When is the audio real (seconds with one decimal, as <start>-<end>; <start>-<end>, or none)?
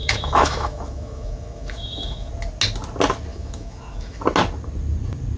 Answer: 2.3-3.3; 4.2-5.4